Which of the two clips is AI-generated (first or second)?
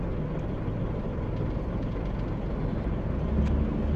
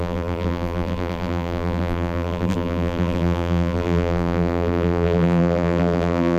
second